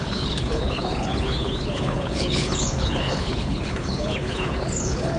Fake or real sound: fake